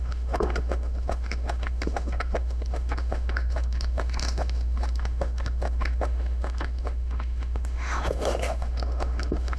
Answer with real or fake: fake